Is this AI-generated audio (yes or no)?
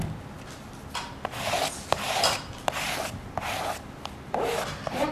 no